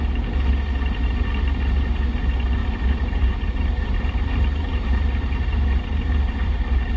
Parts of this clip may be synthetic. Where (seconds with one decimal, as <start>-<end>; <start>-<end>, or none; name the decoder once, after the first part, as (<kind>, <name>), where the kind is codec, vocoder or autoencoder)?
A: 2.6-7.0 (vocoder, BigVGAN v2)